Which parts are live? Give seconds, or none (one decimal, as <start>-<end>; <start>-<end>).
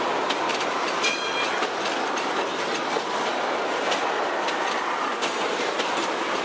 0.0-0.5; 2.1-6.4